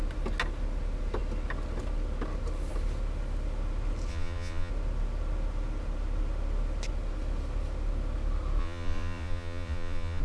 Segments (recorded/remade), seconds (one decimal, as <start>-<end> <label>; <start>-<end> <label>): 0.0-4.1 recorded; 4.1-4.7 remade; 4.7-8.6 recorded; 8.6-10.2 remade